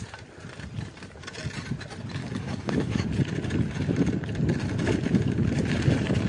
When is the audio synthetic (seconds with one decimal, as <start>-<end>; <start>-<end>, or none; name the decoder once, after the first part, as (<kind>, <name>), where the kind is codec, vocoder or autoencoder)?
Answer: 2.2-3.1 (codec, DAC)